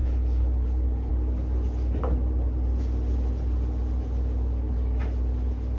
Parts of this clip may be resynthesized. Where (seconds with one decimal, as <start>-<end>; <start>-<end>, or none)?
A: 0.0-1.1